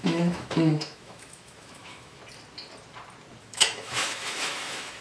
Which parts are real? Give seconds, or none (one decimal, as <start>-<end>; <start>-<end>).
2.2-3.4